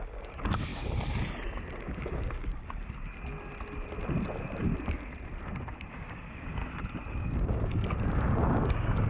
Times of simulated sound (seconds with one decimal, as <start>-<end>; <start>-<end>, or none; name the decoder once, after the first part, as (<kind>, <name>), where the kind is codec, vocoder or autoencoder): 0.0-0.7 (codec, DAC); 1.8-3.1; 5.9-6.6; 7.1-9.1